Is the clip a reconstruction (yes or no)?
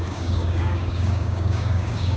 yes